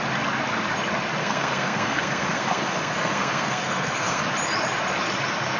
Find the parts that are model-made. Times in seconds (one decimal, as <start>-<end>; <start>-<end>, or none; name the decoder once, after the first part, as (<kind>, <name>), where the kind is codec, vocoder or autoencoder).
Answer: 1.2-4.2 (codec, SNAC)